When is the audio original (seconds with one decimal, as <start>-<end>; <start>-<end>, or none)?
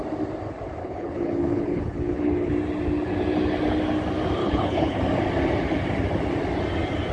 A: 0.0-0.8; 2.5-4.4; 5.0-7.1